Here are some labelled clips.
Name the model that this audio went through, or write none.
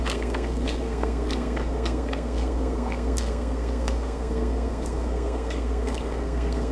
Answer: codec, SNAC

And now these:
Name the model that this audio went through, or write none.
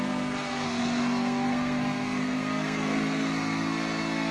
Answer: codec, SNAC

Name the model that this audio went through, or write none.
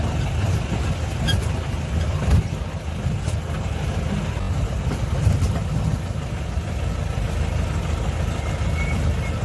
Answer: none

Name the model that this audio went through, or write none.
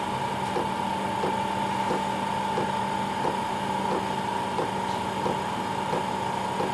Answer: none